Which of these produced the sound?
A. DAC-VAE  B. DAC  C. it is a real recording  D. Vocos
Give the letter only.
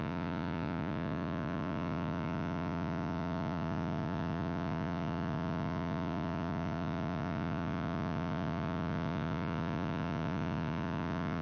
D